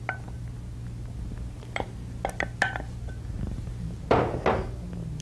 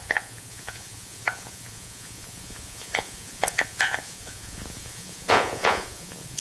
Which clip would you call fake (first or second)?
second